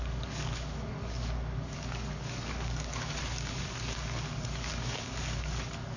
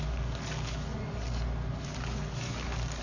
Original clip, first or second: second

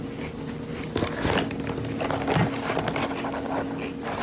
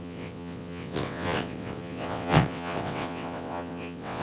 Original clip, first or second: first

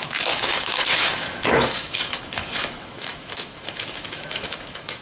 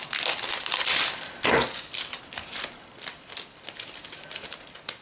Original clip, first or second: second